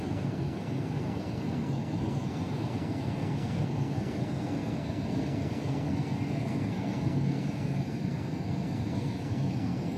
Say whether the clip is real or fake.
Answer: fake